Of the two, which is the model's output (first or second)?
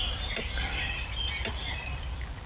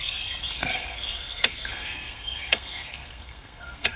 second